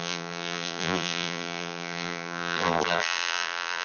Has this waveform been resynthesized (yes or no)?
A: yes